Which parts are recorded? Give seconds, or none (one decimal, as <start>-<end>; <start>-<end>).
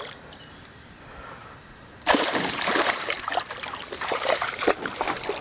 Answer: 0.0-1.4; 4.6-5.4